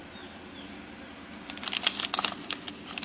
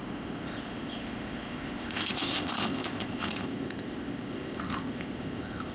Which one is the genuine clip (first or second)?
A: first